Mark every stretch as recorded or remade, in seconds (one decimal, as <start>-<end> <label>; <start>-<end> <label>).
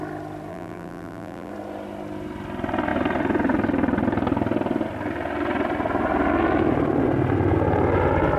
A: 0.0-0.5 recorded; 0.5-1.5 remade; 1.5-8.4 recorded